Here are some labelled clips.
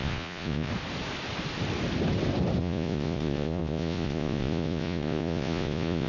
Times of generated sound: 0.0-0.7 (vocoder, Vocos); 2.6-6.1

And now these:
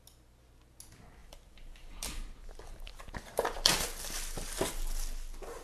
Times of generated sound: 1.2-4.6 (vocoder, BigVGAN v2)

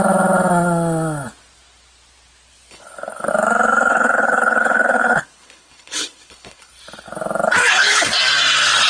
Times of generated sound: 2.7-3.3 (codec, HILCodec); 3.9-6.7; 7.6-8.1

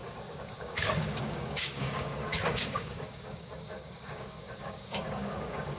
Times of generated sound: 0.0-5.8 (codec, DAC)